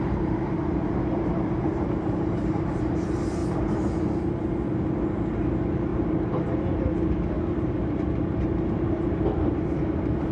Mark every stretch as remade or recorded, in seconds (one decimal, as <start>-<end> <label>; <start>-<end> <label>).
0.0-3.4 remade; 3.4-5.4 recorded; 5.4-5.9 remade; 5.9-7.8 recorded; 7.8-10.3 remade